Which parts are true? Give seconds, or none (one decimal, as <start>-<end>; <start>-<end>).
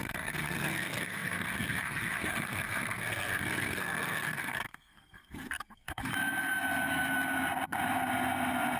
6.1-8.8